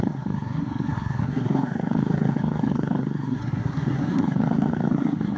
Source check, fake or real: fake